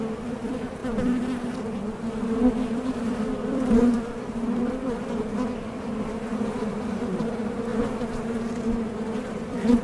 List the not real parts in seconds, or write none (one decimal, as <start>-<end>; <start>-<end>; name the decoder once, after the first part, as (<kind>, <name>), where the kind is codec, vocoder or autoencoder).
0.0-0.8 (vocoder, BigVGAN v2); 2.9-7.7; 8.9-9.8